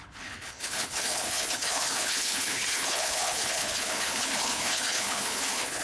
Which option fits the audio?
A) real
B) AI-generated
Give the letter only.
B